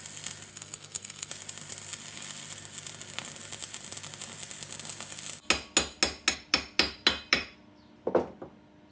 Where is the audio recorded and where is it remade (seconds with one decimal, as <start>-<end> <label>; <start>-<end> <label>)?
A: 0.0-0.5 recorded; 0.5-1.3 remade; 1.3-8.9 recorded